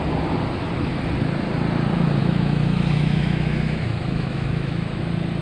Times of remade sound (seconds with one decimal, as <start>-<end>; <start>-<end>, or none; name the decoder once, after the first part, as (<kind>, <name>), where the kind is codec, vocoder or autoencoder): 2.2-5.0 (autoencoder, DAC-VAE)